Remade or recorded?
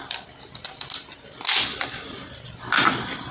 recorded